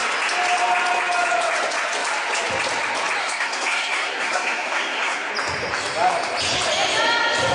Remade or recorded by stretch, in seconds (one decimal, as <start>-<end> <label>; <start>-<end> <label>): 0.0-3.2 recorded; 3.2-5.3 remade; 5.3-7.5 recorded